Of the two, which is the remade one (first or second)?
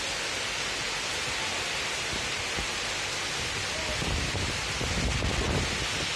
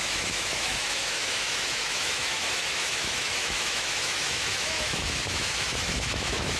second